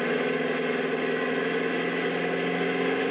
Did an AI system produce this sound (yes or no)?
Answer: no